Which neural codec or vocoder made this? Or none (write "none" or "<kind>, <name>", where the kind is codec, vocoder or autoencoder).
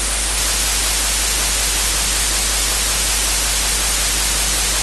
none